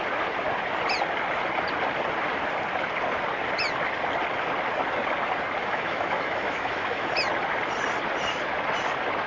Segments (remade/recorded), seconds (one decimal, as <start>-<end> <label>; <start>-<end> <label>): 0.0-5.6 recorded; 5.6-7.1 remade; 7.1-9.3 recorded